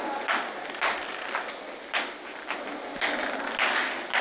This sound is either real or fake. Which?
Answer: real